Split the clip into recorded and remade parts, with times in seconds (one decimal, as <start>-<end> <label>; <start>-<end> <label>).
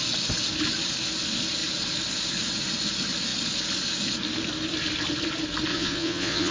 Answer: 0.0-5.7 recorded; 5.7-6.5 remade